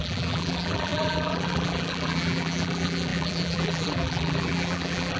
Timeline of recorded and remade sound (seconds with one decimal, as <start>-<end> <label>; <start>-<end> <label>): 0.0-5.2 remade